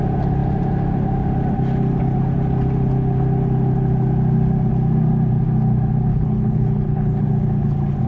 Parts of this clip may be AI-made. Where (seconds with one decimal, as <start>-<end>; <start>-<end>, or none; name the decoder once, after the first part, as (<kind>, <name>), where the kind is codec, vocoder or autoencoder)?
6.1-7.3 (codec, HILCodec)